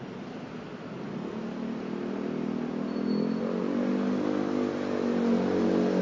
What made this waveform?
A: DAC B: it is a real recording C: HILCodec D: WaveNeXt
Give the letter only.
B